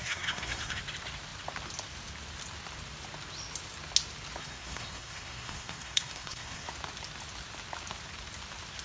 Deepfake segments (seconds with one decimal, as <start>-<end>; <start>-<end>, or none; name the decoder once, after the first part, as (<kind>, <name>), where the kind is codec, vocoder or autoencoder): 0.0-0.8 (codec, SNAC); 4.4-6.7